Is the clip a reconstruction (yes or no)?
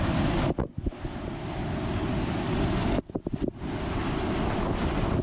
no